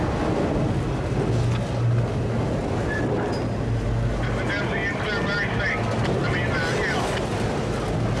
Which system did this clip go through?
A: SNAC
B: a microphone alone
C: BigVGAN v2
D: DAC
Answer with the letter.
B